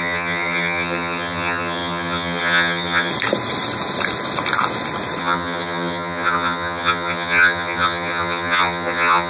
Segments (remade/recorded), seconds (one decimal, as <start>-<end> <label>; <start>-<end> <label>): 0.0-3.1 remade; 3.1-5.2 recorded; 5.2-9.3 remade